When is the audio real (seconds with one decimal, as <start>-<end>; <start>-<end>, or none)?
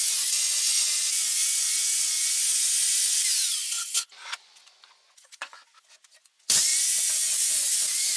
none